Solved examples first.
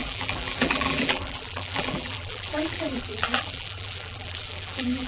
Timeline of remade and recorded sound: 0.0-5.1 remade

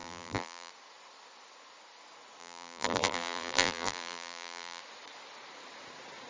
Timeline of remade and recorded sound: 0.0-0.7 remade; 0.7-2.4 recorded; 2.4-4.8 remade; 4.8-6.3 recorded

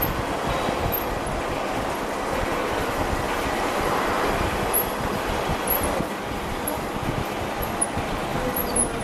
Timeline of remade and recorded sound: 0.0-2.8 recorded; 2.8-7.8 remade; 7.8-8.3 recorded; 8.3-9.0 remade

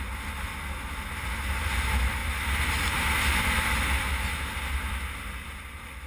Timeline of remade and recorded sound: 0.0-6.1 recorded

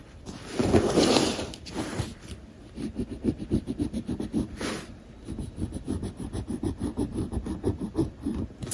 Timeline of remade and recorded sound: 0.0-8.7 remade

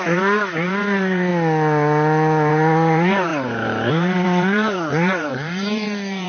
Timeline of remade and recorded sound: 0.0-1.3 remade; 1.3-2.5 recorded; 2.5-6.3 remade

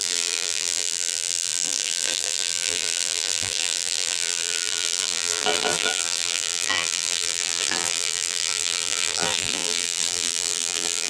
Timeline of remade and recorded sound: 0.0-11.1 remade

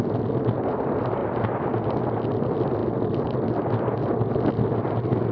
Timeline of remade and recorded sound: 0.0-1.2 recorded; 1.2-1.7 remade; 1.7-5.3 recorded